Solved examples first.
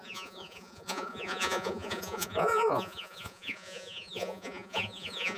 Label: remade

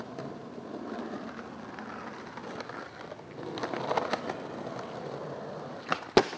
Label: recorded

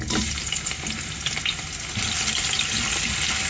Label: recorded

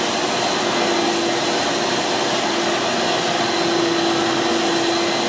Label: recorded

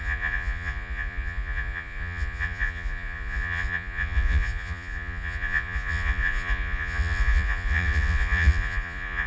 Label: remade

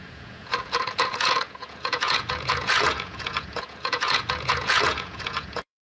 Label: remade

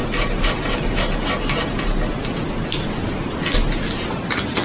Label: recorded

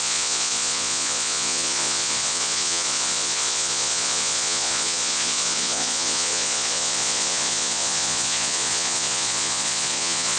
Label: remade